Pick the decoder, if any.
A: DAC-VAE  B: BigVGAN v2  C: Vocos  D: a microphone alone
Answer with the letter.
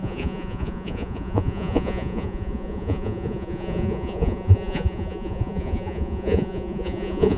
C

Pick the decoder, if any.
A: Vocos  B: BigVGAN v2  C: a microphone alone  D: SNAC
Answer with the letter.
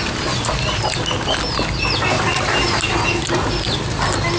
C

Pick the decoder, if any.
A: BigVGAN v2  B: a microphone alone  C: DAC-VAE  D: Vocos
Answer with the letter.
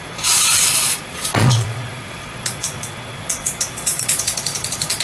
D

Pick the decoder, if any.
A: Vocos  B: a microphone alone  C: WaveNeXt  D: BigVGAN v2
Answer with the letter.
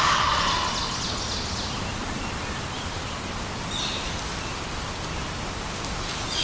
B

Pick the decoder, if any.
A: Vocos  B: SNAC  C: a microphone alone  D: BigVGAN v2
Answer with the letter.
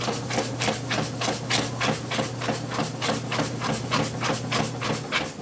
C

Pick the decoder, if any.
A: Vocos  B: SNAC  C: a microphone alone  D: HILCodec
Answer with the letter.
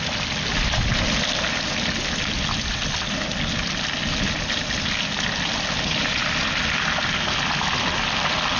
C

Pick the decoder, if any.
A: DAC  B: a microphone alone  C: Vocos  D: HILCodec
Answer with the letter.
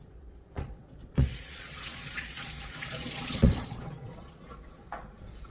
C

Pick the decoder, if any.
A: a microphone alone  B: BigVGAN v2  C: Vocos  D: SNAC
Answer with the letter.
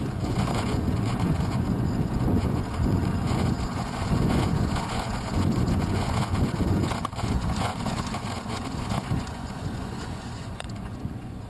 C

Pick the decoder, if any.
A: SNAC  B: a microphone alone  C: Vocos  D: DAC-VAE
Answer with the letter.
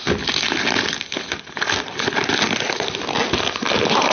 B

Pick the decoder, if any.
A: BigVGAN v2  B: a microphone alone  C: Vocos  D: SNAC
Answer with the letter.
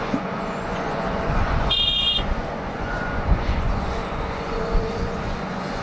C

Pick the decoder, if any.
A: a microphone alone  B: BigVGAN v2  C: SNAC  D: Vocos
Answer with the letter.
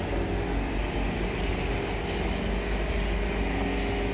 A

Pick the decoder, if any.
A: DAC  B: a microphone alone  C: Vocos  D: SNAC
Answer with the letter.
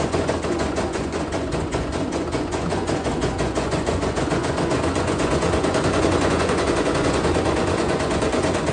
C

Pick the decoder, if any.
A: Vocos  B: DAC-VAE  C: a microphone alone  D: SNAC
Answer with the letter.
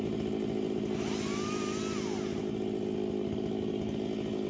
C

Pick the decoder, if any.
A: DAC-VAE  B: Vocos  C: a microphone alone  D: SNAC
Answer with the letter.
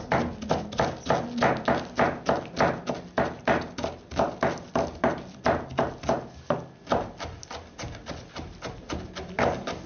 C